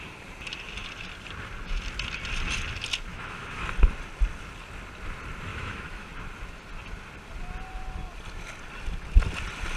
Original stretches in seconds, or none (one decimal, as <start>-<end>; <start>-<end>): 0.0-3.1; 3.6-5.5; 6.1-9.8